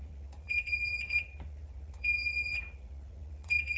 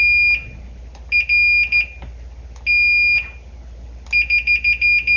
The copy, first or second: first